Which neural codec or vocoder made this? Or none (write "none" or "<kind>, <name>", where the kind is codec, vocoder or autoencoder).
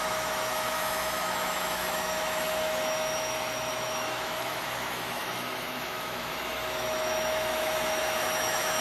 autoencoder, DAC-VAE